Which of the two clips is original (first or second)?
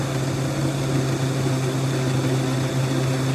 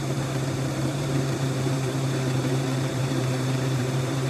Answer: first